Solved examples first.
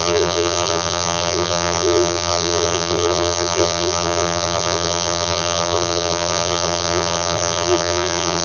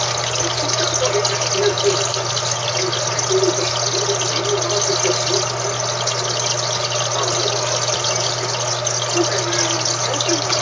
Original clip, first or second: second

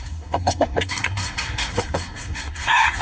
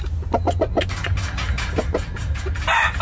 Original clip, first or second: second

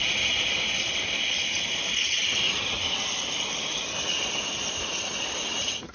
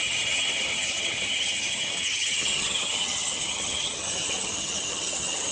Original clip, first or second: first